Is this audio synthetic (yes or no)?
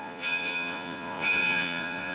yes